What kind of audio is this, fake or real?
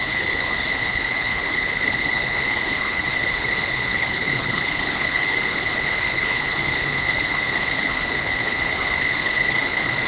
fake